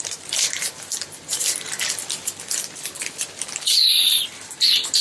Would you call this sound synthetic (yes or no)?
yes